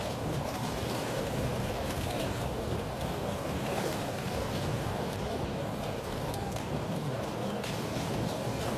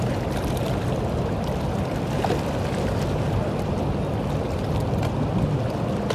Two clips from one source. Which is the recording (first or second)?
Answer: second